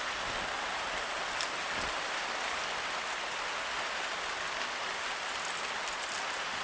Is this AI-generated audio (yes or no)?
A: no